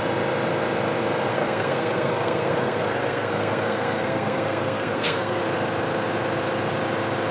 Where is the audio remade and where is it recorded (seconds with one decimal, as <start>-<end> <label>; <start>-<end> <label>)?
0.0-1.3 recorded; 1.3-5.4 remade; 5.4-7.3 recorded